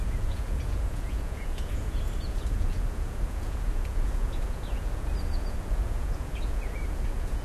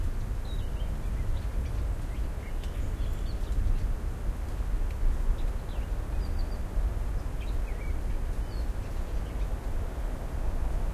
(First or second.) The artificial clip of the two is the first